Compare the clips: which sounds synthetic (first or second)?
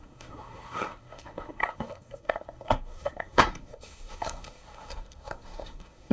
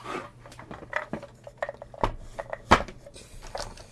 first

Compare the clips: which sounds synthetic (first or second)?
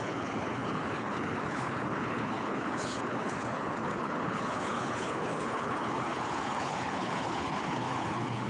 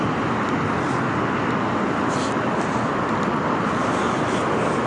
first